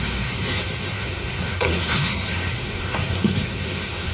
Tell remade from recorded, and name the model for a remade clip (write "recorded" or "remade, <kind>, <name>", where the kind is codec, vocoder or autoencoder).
remade, codec, SNAC